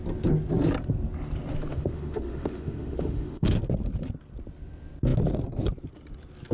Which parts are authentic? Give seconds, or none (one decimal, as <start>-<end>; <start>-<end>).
0.0-1.7; 3.5-6.5